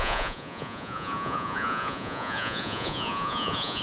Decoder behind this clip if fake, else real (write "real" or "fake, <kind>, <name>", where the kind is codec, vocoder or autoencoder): fake, vocoder, Vocos